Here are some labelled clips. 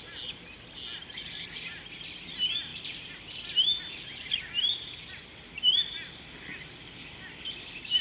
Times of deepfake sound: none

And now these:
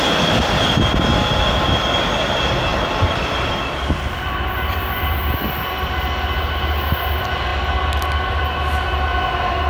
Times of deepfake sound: 2.7-5.2

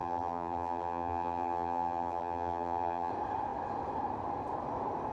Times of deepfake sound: 0.0-3.1

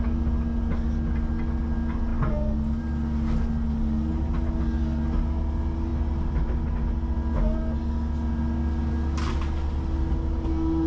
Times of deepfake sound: none